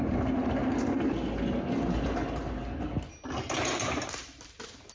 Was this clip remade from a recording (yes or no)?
no